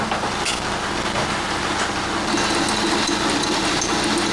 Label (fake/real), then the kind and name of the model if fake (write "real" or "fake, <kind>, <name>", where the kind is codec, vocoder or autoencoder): real